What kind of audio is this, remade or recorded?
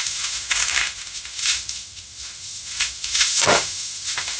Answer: remade